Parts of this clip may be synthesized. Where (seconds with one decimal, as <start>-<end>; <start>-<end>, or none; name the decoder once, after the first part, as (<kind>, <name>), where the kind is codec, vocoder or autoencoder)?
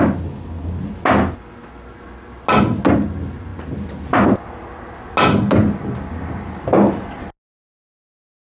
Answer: none